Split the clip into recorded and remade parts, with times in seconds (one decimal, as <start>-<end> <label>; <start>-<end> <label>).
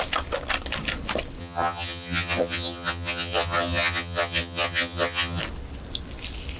0.0-1.4 recorded; 1.4-5.4 remade; 5.4-6.6 recorded